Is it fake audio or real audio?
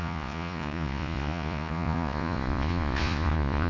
fake